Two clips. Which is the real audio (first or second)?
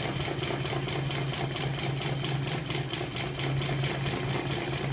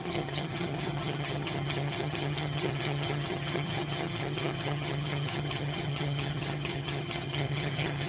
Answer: first